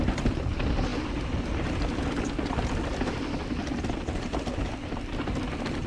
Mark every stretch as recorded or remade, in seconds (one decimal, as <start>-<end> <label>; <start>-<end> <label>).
0.0-5.9 recorded